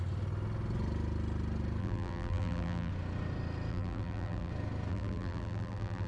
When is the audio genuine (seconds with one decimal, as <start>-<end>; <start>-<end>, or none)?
0.0-1.8; 2.9-3.7; 4.5-4.9